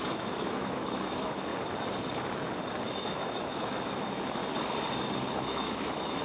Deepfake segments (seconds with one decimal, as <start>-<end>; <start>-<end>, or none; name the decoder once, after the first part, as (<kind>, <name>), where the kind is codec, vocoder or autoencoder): 0.0-1.5 (autoencoder, DAC-VAE); 2.9-4.4; 5.3-6.2

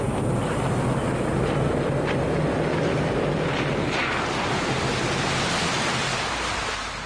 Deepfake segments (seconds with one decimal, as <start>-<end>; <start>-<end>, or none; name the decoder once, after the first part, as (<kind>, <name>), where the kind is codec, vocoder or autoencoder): none

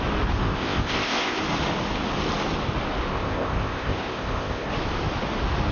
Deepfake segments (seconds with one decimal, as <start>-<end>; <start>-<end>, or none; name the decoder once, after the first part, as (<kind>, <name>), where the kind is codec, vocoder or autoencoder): 0.4-1.4 (codec, ZipCodec); 3.1-4.7

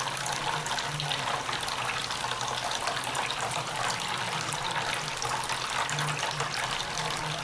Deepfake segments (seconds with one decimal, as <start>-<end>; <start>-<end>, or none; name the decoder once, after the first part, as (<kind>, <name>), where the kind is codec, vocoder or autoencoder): none

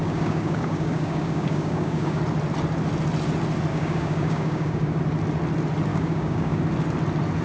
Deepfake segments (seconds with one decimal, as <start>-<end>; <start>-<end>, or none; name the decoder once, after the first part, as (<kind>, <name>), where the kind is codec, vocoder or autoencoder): 0.0-2.2 (codec, DAC); 3.7-5.0; 5.9-6.6